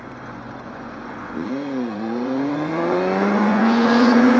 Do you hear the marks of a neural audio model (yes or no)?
yes